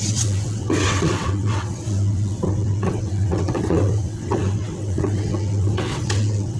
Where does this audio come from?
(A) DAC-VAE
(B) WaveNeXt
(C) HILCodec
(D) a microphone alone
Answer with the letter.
B